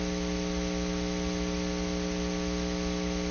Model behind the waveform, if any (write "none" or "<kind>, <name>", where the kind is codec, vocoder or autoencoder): none